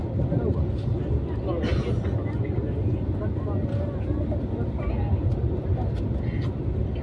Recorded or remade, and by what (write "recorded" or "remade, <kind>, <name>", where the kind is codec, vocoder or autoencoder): recorded